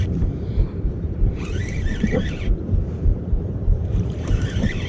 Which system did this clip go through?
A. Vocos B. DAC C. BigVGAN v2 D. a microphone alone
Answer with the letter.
C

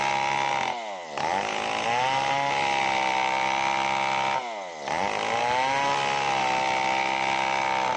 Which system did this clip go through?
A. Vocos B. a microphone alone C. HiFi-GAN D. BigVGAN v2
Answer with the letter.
B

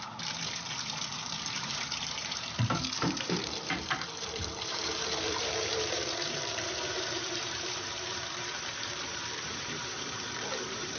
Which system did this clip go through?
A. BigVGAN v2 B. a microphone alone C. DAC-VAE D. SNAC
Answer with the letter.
A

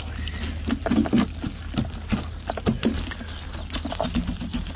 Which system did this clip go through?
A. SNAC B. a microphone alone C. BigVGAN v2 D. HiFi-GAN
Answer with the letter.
B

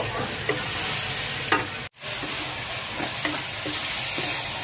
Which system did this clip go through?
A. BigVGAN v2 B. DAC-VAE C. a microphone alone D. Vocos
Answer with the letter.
C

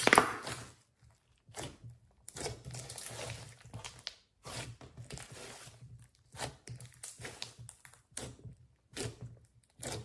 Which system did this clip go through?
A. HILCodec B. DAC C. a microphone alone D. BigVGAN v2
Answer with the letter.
C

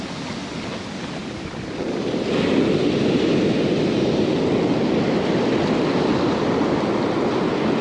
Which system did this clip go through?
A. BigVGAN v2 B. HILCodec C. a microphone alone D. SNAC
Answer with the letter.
C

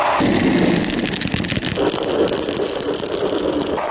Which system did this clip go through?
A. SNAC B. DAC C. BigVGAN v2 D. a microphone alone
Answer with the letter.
D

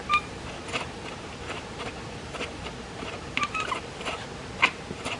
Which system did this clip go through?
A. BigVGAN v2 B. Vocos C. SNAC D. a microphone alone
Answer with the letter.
A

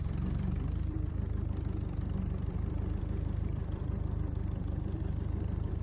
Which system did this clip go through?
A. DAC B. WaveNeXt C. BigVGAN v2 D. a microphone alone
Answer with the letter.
C